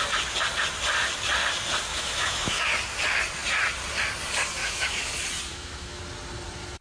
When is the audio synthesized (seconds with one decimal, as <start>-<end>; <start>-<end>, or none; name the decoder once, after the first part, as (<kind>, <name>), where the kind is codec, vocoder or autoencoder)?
1.9-2.6 (autoencoder, DAC-VAE); 4.6-5.1; 5.5-6.0